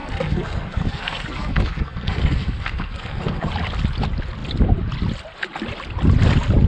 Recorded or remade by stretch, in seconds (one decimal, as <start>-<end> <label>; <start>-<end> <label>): 0.0-3.5 remade; 3.5-6.7 recorded